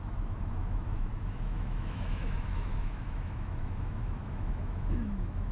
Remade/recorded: remade